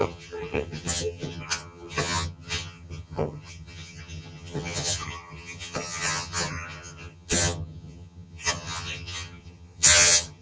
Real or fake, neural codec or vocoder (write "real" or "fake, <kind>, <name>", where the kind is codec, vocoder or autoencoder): fake, vocoder, HiFi-GAN